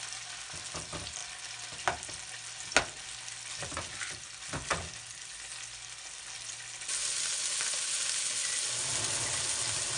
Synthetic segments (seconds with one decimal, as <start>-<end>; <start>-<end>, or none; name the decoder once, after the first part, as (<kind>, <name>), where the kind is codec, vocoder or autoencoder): none